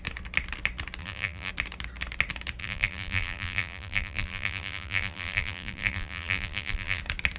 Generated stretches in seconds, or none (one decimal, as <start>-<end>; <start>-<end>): 1.0-1.5; 2.6-7.0